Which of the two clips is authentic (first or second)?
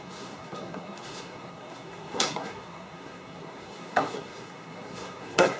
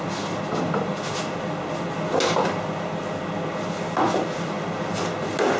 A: second